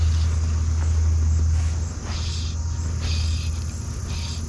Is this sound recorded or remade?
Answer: recorded